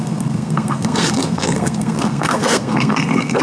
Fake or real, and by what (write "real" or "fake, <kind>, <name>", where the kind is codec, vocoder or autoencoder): fake, codec, SNAC